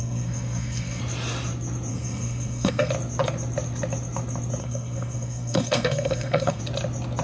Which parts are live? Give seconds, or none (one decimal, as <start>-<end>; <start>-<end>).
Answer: 1.0-1.9; 2.9-4.6; 6.6-7.2